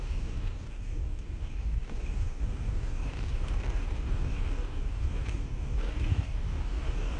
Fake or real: fake